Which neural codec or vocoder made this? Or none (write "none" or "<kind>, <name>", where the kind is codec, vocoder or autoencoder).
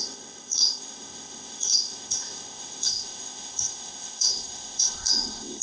codec, ZipCodec